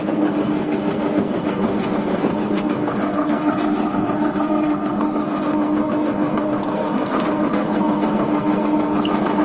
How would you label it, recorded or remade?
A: remade